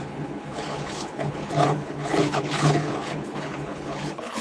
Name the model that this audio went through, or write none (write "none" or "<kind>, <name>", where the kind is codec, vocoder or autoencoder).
codec, HILCodec